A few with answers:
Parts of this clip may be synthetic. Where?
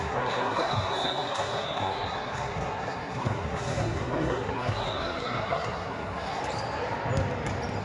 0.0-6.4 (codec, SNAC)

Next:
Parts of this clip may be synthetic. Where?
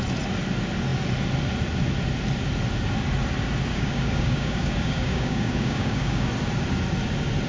3.7-6.3 (codec, DAC)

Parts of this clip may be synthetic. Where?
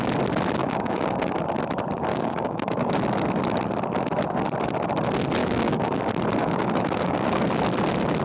0.6-1.4 (codec, DAC); 2.1-2.9; 5.4-6.0; 6.4-7.4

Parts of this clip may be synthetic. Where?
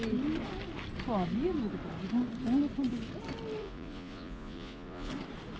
3.6-5.1 (vocoder, Vocos)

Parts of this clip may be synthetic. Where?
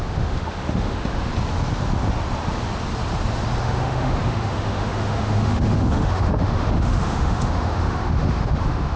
0.0-1.3 (autoencoder, DAC-VAE); 3.6-9.0